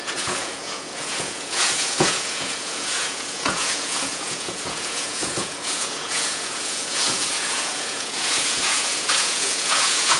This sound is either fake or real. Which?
fake